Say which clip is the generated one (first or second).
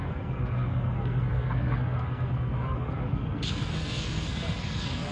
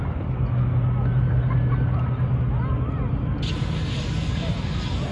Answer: first